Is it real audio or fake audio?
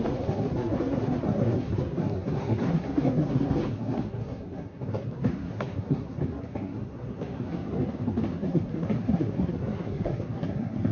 fake